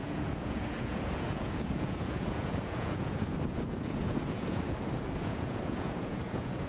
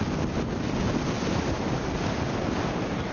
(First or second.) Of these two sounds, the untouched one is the second